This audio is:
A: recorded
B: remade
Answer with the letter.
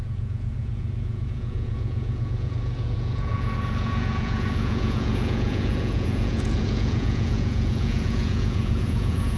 B